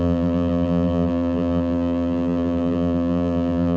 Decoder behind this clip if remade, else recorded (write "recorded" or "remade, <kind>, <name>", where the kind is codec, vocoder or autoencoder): remade, vocoder, BigVGAN v2